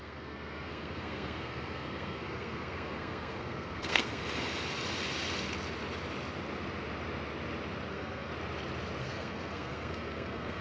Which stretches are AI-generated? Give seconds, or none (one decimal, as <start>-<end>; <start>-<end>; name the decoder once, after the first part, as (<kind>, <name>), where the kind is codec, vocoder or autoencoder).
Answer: 0.0-4.2 (codec, SNAC); 7.9-8.3; 9.0-10.6